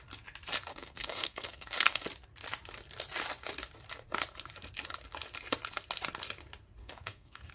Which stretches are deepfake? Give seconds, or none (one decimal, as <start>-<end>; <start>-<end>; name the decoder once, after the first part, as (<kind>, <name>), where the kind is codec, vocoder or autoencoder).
0.7-2.0 (codec, SNAC); 6.8-7.5

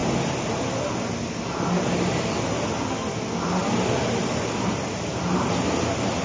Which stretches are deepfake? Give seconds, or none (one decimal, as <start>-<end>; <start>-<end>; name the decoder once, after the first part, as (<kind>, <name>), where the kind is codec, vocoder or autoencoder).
none

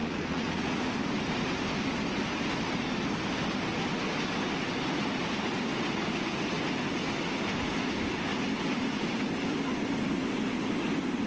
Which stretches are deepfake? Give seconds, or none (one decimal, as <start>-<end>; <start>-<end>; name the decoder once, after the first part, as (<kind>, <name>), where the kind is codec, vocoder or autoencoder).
0.0-0.8 (vocoder, Vocos)

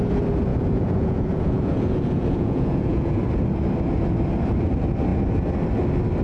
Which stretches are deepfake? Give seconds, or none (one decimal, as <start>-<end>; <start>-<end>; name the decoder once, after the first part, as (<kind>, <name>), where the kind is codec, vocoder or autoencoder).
0.5-3.2 (vocoder, Vocos)

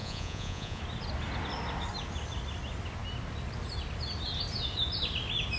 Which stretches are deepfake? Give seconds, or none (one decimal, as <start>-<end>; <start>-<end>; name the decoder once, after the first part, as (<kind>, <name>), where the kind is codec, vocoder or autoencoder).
0.0-0.8 (vocoder, Vocos)